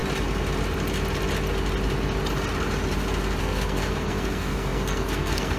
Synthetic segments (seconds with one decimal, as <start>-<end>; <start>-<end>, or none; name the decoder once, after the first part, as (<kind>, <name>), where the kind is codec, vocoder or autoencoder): 3.4-5.6 (codec, SNAC)